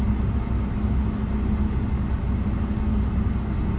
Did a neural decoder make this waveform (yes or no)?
no